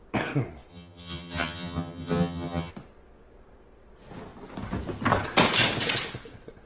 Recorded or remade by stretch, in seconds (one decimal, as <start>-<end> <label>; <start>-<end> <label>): 0.0-0.7 recorded; 0.7-2.7 remade; 2.7-6.7 recorded

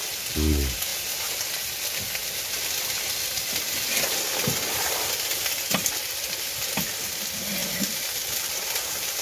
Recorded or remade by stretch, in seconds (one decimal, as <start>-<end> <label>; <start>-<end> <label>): 0.0-2.2 recorded; 2.2-5.1 remade; 5.1-7.6 recorded; 7.6-8.7 remade; 8.7-9.2 recorded

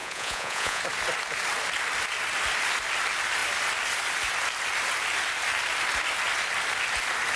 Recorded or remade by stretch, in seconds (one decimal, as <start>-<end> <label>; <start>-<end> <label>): 0.0-0.8 remade; 0.8-7.4 recorded